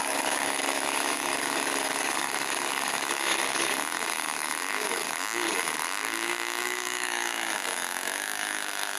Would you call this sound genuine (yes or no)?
no